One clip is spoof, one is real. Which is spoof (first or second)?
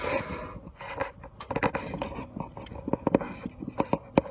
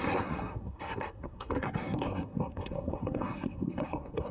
second